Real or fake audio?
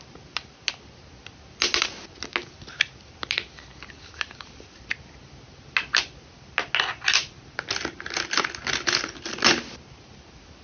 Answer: real